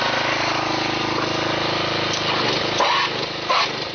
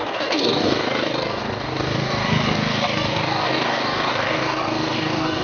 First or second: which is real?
first